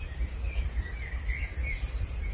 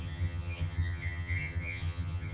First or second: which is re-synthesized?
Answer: second